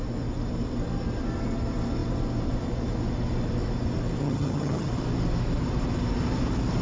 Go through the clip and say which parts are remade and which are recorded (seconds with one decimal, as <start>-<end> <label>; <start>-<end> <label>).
0.0-4.2 recorded; 4.2-4.9 remade; 4.9-6.8 recorded